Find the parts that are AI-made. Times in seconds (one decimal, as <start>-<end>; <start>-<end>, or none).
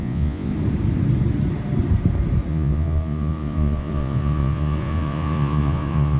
0.0-0.5; 2.5-6.2